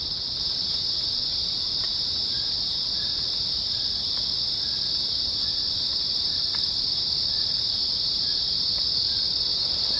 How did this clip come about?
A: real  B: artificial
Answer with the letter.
B